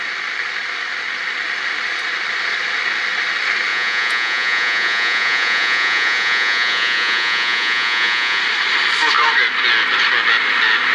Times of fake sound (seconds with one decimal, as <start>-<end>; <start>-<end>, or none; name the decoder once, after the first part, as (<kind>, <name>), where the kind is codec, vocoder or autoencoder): 3.7-8.4 (vocoder, Vocos)